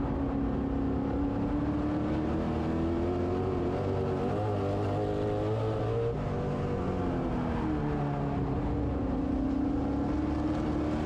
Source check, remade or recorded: recorded